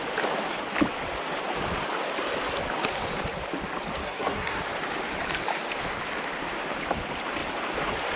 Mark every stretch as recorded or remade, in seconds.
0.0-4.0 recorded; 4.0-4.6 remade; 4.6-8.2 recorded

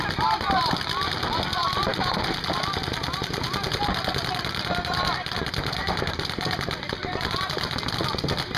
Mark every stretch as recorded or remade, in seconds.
0.0-5.8 recorded; 5.8-6.4 remade; 6.4-8.6 recorded